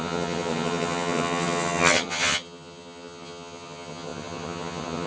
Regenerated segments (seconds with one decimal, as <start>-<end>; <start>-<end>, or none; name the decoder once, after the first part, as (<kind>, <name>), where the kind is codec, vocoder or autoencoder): 0.0-5.1 (vocoder, HiFi-GAN)